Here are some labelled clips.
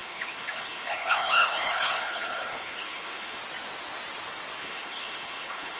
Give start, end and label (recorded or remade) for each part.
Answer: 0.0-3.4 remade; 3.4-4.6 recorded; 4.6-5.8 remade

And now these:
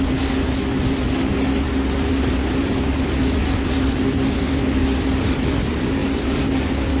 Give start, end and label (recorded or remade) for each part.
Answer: 0.0-7.0 recorded